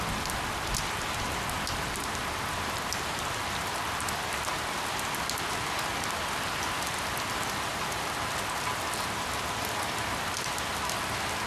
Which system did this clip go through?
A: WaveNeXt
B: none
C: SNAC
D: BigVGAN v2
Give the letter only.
B